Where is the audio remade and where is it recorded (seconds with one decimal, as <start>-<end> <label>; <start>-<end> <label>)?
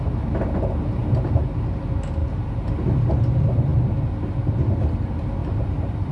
0.0-1.0 recorded; 1.0-1.8 remade; 1.8-2.2 recorded; 2.2-2.7 remade; 2.7-5.4 recorded; 5.4-6.1 remade